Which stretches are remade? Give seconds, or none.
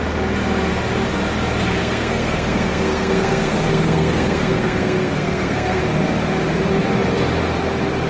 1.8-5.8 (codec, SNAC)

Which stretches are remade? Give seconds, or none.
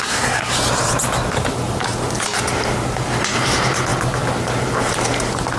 0.0-0.5 (codec, SNAC)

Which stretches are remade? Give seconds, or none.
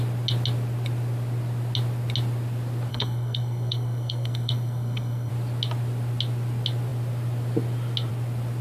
2.9-5.3 (codec, SNAC)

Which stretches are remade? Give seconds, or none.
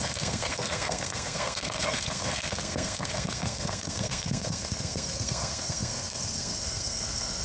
0.0-7.4 (codec, SNAC)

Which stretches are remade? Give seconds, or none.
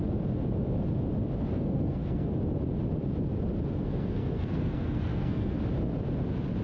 1.5-2.3 (codec, SNAC); 3.7-5.6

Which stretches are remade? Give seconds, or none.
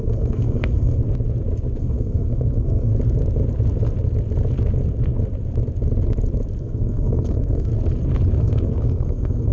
0.0-1.0 (codec, SNAC); 1.8-2.9; 6.6-7.7; 8.4-9.5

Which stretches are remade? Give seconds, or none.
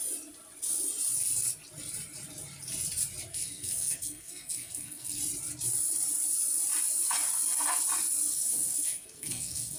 3.3-5.2 (codec, SNAC); 8.3-9.8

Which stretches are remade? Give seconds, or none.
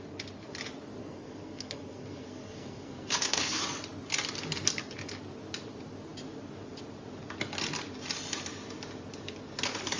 1.0-3.6 (codec, SNAC)